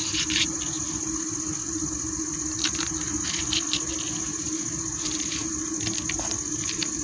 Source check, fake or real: real